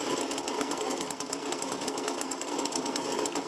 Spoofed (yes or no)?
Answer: yes